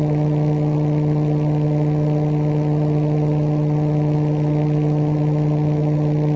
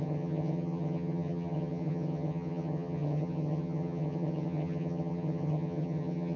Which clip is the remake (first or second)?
second